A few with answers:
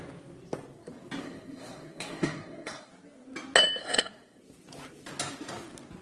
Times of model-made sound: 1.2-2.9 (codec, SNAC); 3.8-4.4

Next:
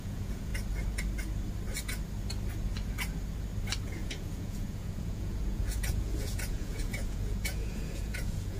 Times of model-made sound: 0.0-0.5 (vocoder, Vocos); 3.8-8.6

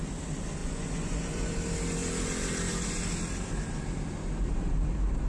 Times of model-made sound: 0.6-1.5 (vocoder, Vocos)

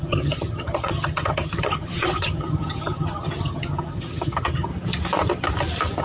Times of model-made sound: 0.0-4.7 (vocoder, HiFi-GAN)

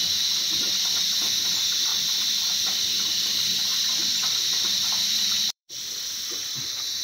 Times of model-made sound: 1.9-3.1 (vocoder, BigVGAN v2); 3.7-5.8

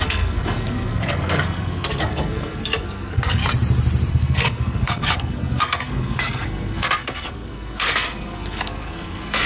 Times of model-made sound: 0.0-3.4 (codec, SNAC); 4.1-9.5

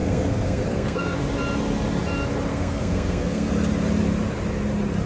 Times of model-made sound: 0.0-1.2 (codec, SNAC); 2.5-3.5